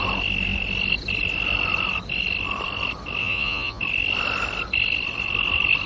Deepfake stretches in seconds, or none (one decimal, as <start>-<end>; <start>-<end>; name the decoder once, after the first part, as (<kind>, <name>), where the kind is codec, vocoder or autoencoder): 3.2-3.8 (vocoder, Vocos)